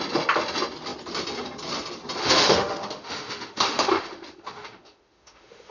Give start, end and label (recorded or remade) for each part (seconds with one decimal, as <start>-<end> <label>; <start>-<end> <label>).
0.0-2.2 recorded; 2.2-5.7 remade

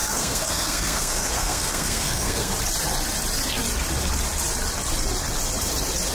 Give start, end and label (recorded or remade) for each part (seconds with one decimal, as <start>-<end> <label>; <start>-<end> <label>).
0.0-2.5 remade; 2.5-6.1 recorded

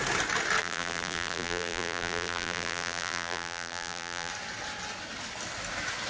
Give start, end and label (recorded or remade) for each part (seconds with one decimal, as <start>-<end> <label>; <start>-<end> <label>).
0.0-0.6 recorded; 0.6-4.3 remade; 4.3-6.1 recorded

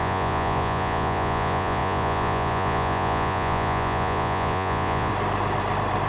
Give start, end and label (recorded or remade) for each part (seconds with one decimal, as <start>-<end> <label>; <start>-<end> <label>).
0.0-5.1 remade; 5.1-6.1 recorded

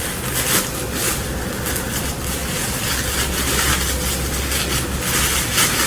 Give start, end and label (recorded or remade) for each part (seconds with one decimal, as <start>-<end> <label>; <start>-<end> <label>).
0.0-5.9 recorded

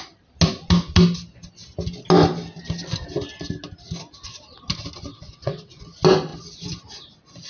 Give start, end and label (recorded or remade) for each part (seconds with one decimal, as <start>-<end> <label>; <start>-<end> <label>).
0.0-5.1 recorded; 5.1-5.8 remade; 5.8-7.5 recorded

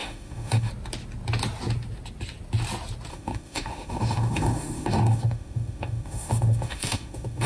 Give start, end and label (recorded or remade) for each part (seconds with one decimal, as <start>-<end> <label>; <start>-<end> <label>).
0.0-0.7 remade; 0.7-3.1 recorded; 3.1-7.5 remade